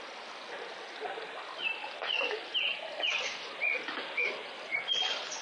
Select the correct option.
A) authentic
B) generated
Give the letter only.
A